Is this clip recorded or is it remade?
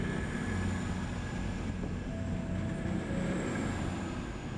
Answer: recorded